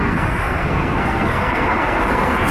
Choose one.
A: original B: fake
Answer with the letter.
B